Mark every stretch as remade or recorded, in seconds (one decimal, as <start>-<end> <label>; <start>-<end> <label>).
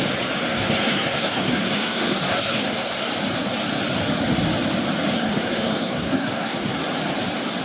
0.0-0.4 recorded; 0.4-3.1 remade; 3.1-5.1 recorded; 5.1-6.7 remade; 6.7-7.6 recorded